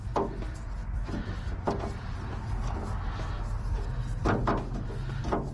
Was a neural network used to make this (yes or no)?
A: no